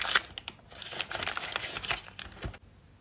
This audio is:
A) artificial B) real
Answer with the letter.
B